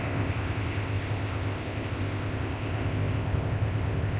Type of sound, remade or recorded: remade